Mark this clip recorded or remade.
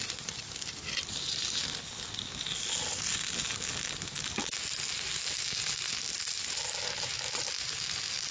recorded